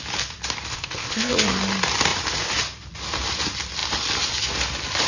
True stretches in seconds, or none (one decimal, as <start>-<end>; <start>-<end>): 0.0-0.7; 1.3-5.1

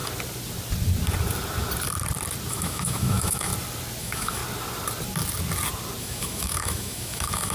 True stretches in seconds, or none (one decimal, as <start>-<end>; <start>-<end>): 0.0-2.5; 3.5-4.0; 4.4-6.0

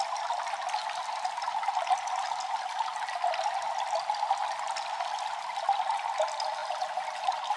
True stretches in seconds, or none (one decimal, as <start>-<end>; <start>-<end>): 0.0-7.6

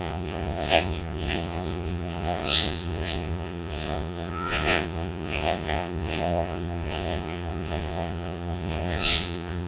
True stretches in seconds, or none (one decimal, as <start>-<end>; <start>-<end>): none